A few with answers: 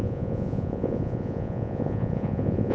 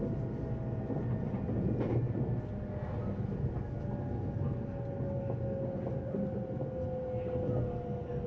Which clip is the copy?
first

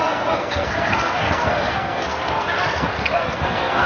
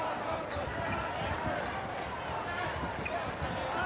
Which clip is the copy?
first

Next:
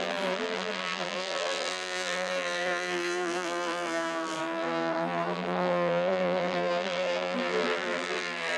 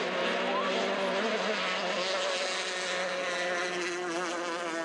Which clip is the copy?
first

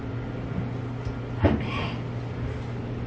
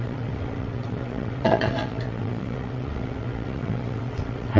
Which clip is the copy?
second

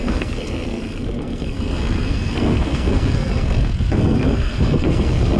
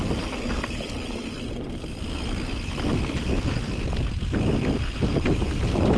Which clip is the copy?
first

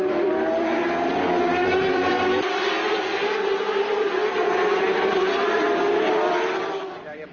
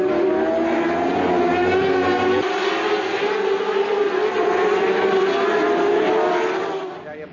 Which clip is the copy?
first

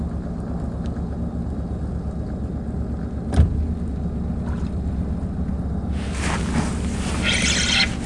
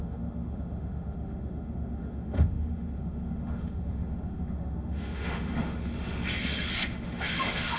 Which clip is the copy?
second